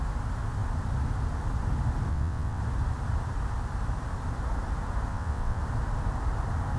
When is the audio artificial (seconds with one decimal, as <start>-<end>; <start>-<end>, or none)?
2.1-2.6; 5.1-5.6